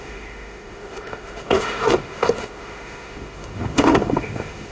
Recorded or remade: remade